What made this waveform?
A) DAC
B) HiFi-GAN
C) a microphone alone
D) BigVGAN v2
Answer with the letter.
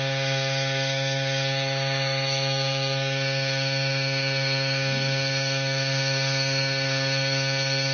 A